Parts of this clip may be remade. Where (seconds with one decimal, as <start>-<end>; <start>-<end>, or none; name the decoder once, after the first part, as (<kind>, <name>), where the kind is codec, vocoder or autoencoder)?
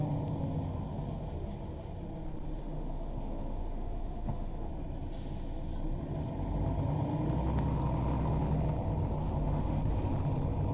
2.6-4.7 (autoencoder, DAC-VAE); 9.2-10.1